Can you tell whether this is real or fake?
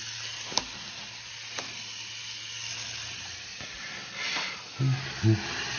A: real